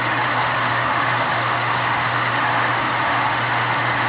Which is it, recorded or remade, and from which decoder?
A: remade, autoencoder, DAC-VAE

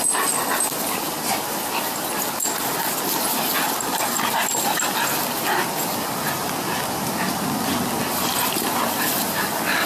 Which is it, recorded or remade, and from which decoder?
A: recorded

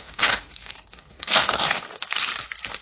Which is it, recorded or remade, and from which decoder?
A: remade, codec, SNAC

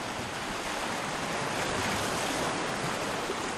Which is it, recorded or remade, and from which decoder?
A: recorded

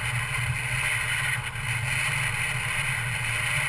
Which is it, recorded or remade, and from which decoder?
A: recorded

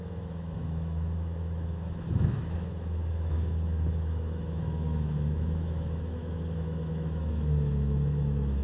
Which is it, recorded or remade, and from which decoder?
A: remade, autoencoder, DAC-VAE